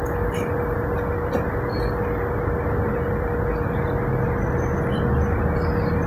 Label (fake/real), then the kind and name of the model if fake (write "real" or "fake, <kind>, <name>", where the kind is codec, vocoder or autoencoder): real